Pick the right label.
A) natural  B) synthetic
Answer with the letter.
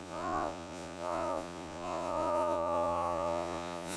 B